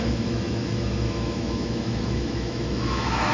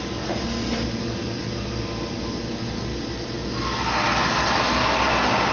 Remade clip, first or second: first